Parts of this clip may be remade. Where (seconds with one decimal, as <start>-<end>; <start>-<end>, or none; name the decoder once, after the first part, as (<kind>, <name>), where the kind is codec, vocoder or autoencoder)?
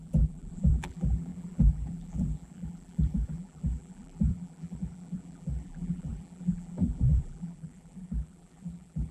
0.0-9.1 (vocoder, BigVGAN v2)